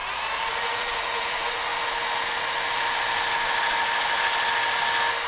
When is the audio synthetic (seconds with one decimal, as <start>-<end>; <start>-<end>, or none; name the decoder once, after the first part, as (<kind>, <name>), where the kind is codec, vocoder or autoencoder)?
0.0-1.7 (vocoder, Vocos)

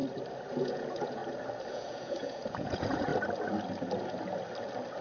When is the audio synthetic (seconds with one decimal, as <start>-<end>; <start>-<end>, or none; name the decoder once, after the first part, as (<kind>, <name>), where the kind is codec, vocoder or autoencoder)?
0.5-1.2 (vocoder, Vocos); 1.7-3.1

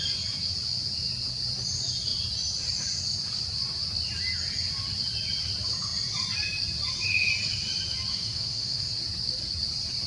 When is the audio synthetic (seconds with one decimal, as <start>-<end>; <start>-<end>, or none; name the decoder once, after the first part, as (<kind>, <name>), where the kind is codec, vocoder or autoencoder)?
8.1-8.9 (autoencoder, DAC-VAE)